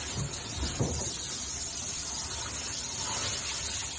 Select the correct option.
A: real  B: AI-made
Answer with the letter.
A